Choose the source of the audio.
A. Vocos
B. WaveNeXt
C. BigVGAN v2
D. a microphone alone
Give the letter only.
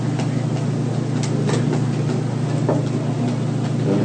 D